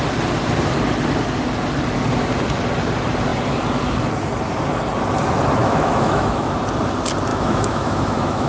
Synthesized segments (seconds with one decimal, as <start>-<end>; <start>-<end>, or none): 5.6-6.5; 7.3-8.5

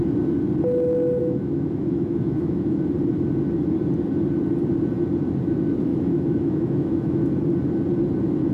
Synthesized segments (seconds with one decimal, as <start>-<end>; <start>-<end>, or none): 1.2-2.8; 5.9-7.3